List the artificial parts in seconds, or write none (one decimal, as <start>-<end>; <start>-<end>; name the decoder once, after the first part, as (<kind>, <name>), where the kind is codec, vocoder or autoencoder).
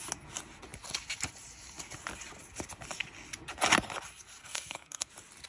4.4-5.1 (codec, SNAC)